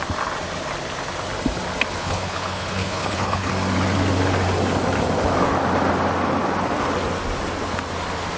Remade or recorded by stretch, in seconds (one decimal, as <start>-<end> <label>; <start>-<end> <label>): 0.0-2.0 recorded; 2.0-3.5 remade; 3.5-8.4 recorded

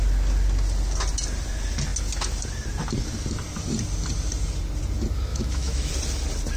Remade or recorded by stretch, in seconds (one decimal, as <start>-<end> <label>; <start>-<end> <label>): 0.0-5.3 recorded; 5.3-5.9 remade; 5.9-6.6 recorded

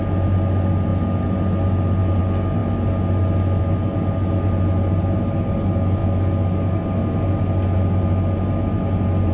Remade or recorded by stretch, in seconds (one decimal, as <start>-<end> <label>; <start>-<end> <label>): 0.0-9.3 recorded

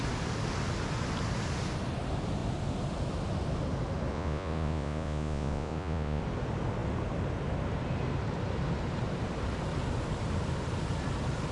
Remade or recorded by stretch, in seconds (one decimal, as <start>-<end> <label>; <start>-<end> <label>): 0.0-4.1 recorded; 4.1-6.2 remade; 6.2-11.5 recorded

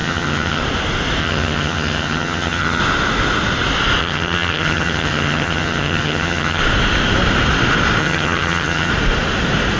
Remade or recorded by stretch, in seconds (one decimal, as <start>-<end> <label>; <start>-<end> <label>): 0.0-0.6 remade; 0.6-1.2 recorded; 1.2-2.8 remade; 2.8-4.0 recorded; 4.0-6.6 remade; 6.6-8.0 recorded; 8.0-8.9 remade; 8.9-9.8 recorded